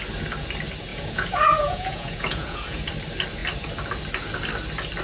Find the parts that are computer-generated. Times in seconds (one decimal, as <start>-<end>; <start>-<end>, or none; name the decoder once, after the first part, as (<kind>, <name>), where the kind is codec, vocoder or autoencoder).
0.9-2.9 (vocoder, Vocos)